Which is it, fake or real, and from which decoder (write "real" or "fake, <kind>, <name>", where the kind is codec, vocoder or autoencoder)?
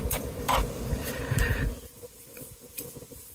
fake, vocoder, BigVGAN v2